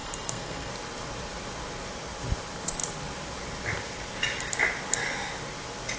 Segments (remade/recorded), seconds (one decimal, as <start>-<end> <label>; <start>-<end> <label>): 0.0-0.7 remade; 0.7-6.0 recorded